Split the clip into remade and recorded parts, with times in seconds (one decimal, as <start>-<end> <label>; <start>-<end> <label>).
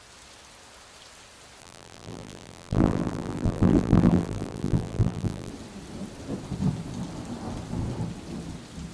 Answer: 0.0-1.6 recorded; 1.6-5.5 remade; 5.5-8.9 recorded